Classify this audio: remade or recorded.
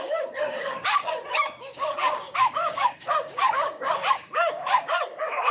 remade